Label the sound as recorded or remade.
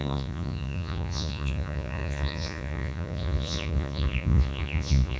remade